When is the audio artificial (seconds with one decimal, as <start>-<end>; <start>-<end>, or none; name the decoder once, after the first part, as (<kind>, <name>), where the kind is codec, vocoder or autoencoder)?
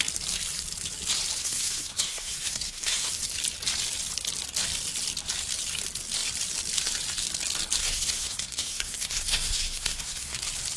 1.4-3.1 (codec, SNAC); 7.8-10.4